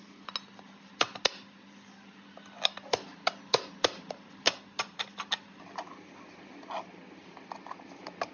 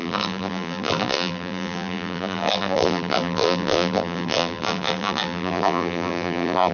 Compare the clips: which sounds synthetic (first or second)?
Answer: second